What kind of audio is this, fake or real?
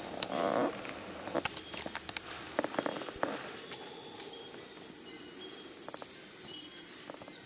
real